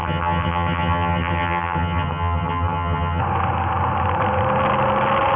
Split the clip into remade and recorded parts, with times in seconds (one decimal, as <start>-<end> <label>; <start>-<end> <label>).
0.0-3.2 remade; 3.2-5.4 recorded